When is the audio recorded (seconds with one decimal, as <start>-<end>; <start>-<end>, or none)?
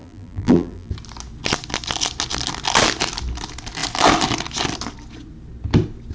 0.9-6.1